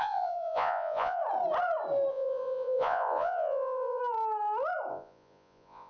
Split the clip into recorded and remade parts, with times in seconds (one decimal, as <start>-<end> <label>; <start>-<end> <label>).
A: 0.0-1.2 remade; 1.2-2.1 recorded; 2.1-4.0 remade; 4.0-4.9 recorded; 4.9-5.9 remade